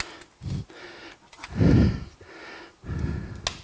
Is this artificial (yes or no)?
no